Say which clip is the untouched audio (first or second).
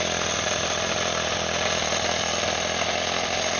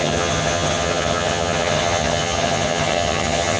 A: first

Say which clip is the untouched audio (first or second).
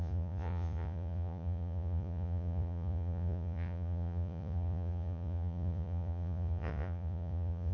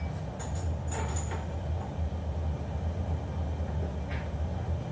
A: second